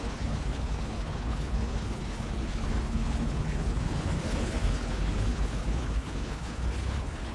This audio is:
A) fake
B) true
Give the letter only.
A